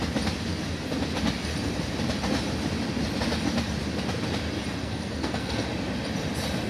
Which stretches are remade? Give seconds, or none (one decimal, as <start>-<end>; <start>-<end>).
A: 4.8-5.7